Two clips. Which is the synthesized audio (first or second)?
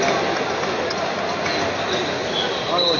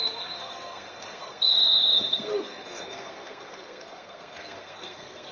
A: second